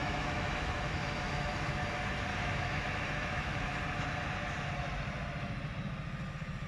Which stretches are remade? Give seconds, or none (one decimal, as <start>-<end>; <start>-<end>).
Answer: 0.0-1.7; 2.3-3.8